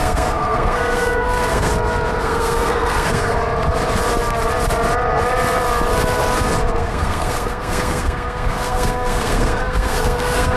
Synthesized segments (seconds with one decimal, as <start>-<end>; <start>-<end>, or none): 0.0-1.7; 2.2-3.4; 6.7-10.6

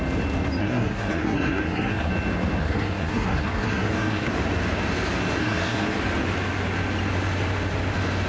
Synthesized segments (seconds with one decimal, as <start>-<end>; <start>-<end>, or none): 0.6-2.1; 2.6-4.3; 5.4-6.0

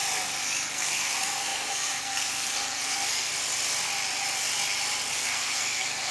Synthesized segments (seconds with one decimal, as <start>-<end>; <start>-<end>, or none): 0.7-3.3; 5.1-6.1

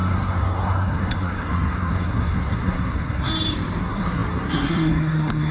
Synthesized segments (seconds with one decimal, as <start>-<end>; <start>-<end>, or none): 0.0-3.3; 3.8-5.5

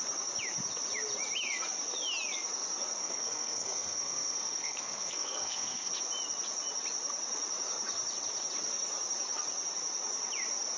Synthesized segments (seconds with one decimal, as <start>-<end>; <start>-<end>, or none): 3.0-5.9

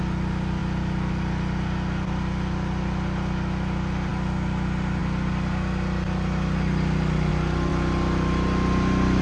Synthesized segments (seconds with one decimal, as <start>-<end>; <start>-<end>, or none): none